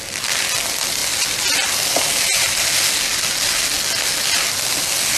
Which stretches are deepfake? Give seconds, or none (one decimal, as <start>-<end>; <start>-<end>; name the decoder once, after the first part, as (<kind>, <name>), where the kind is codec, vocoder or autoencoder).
none